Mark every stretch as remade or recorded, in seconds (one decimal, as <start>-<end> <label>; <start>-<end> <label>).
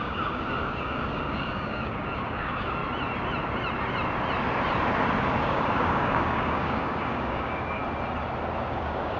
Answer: 0.0-2.8 remade; 2.8-5.4 recorded; 5.4-7.8 remade; 7.8-8.7 recorded; 8.7-9.2 remade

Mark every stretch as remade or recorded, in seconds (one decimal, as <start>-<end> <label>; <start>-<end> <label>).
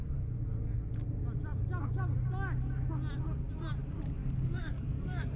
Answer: 0.0-4.2 recorded; 4.2-5.4 remade